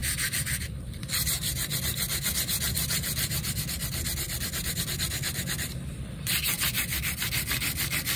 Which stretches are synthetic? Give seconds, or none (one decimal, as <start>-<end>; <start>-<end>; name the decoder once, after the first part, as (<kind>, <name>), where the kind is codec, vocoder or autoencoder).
0.0-1.8 (vocoder, BigVGAN v2)